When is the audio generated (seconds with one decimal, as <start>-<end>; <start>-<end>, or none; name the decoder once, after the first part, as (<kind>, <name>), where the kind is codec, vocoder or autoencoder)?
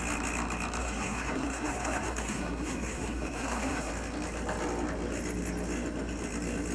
0.8-3.9 (codec, SNAC)